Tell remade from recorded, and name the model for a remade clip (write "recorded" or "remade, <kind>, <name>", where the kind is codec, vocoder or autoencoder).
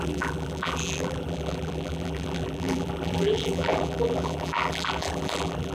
remade, vocoder, BigVGAN v2